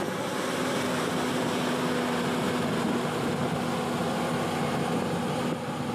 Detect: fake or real real